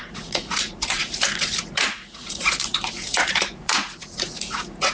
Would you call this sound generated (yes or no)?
yes